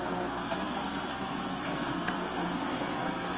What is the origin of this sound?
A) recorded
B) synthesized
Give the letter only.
B